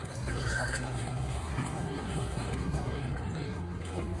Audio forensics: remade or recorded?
remade